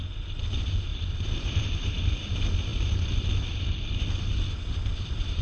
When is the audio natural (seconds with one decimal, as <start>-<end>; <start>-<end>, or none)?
0.0-0.9; 1.7-2.7